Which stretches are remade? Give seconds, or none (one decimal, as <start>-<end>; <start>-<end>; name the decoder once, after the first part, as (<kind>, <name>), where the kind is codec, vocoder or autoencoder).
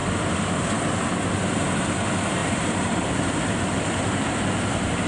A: 0.0-0.5 (vocoder, BigVGAN v2); 2.4-4.4